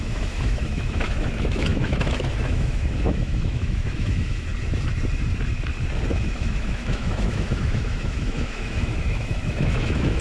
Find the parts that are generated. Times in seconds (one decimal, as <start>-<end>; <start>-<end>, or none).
0.0-4.5; 6.1-10.2